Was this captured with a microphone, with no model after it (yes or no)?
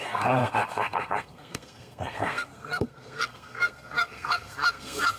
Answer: no